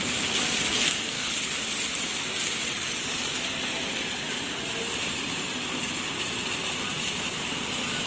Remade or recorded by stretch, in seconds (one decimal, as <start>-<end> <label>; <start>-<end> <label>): 0.0-0.7 recorded; 0.7-1.3 remade; 1.3-8.1 recorded